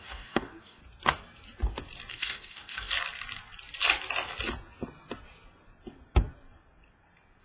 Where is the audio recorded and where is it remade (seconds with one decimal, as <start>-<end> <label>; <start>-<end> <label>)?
0.0-0.8 remade; 0.8-2.1 recorded; 2.1-2.9 remade; 2.9-7.4 recorded